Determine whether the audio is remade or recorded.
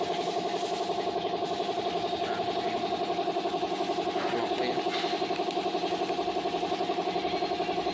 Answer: recorded